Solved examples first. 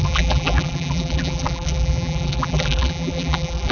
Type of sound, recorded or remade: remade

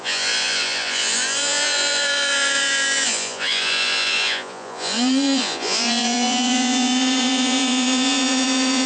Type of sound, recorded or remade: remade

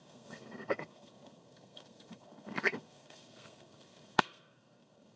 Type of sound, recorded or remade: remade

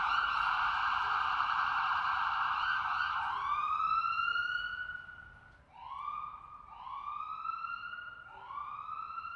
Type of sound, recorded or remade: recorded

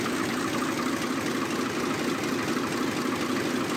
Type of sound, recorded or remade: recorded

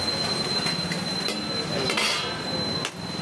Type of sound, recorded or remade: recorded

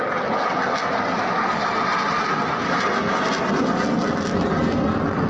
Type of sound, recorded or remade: recorded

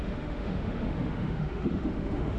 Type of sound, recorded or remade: remade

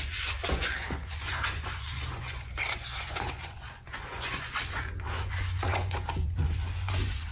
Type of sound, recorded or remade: remade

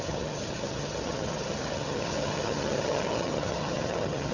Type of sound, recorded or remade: remade